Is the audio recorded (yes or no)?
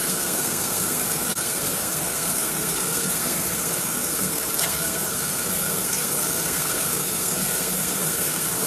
no